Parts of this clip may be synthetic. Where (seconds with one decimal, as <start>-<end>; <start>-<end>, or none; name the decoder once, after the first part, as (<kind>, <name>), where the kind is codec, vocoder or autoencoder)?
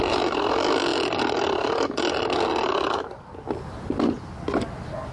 none